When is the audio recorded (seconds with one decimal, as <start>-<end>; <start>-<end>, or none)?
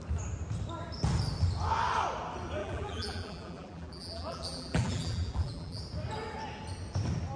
0.0-2.6; 5.8-7.4